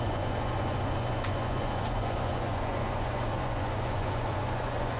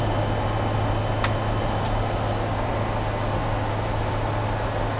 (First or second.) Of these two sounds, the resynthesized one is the first